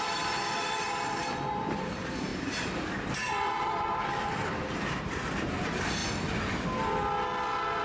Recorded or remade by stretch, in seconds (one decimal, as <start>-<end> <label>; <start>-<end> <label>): 0.0-6.0 remade; 6.0-7.8 recorded